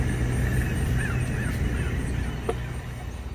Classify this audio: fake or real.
real